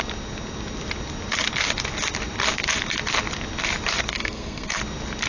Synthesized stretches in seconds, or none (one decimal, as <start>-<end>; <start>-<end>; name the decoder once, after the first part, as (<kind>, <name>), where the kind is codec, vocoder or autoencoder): 4.1-4.8 (codec, SNAC)